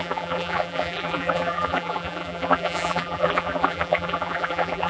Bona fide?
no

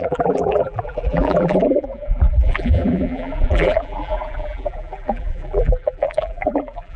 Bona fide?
no